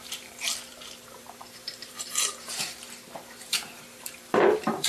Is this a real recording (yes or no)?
no